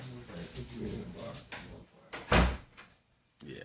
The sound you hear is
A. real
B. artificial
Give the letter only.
A